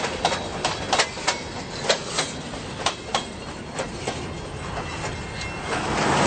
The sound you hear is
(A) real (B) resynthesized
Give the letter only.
A